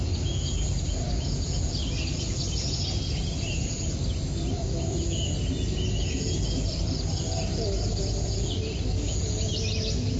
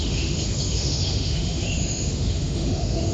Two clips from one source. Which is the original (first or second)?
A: first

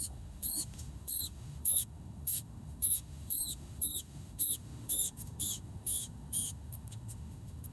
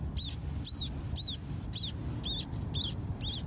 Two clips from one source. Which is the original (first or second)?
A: second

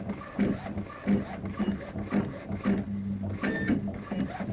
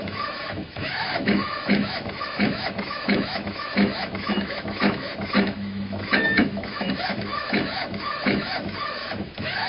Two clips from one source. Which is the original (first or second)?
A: first